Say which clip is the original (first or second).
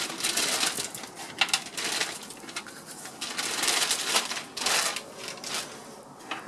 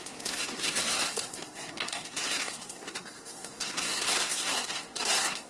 first